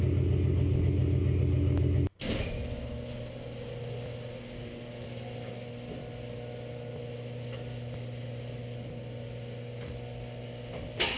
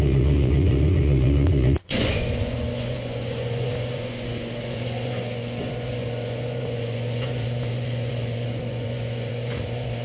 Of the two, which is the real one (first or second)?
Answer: first